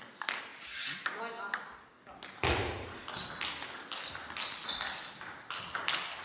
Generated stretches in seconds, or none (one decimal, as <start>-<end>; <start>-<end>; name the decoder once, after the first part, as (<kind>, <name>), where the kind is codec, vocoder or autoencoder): none